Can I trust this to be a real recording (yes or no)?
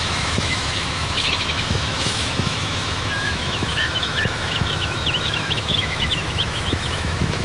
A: no